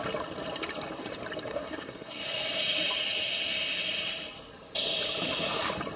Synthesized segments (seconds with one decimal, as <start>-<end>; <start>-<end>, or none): 1.5-2.2